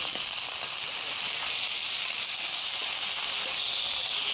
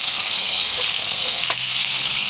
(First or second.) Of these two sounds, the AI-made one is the second